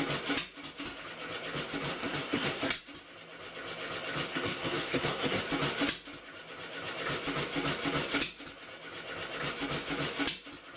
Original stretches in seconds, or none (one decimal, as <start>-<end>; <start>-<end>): 0.0-1.9; 2.8-4.3; 5.4-10.8